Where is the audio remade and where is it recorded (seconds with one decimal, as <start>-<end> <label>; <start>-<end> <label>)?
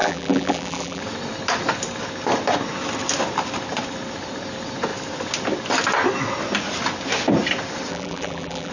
0.0-1.0 remade; 1.0-7.9 recorded; 7.9-8.7 remade